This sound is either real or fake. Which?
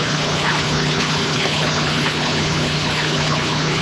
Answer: fake